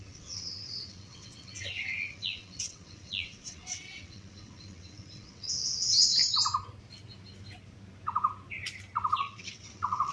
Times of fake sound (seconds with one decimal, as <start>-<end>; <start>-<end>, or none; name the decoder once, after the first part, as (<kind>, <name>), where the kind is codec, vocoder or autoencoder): 0.0-6.2 (vocoder, WaveNeXt); 9.2-10.1